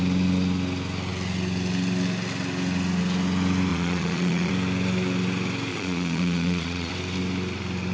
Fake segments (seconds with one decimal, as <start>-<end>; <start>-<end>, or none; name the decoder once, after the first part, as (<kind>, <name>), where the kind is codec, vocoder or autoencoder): 3.7-4.5 (vocoder, Vocos); 5.7-6.9